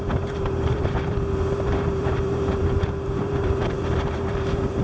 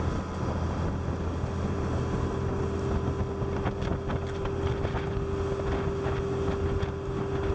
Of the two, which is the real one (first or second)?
second